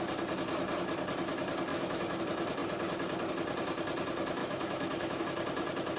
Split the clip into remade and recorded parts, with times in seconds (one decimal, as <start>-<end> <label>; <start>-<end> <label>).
0.0-1.7 recorded; 1.7-2.2 remade; 2.2-4.4 recorded; 4.4-5.2 remade; 5.2-6.0 recorded